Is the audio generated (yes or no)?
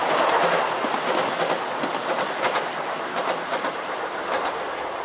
no